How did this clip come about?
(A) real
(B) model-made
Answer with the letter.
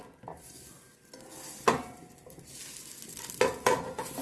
A